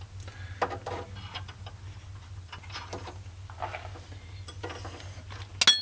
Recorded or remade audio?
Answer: recorded